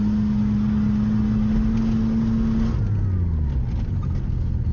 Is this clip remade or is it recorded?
recorded